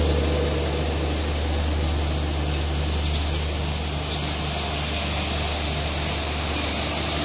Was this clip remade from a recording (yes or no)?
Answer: no